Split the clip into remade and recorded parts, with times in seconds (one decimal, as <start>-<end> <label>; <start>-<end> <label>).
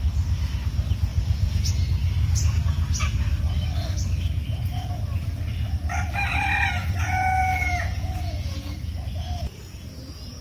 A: 0.0-1.1 recorded; 1.1-1.7 remade; 1.7-6.8 recorded; 6.8-8.9 remade; 8.9-10.4 recorded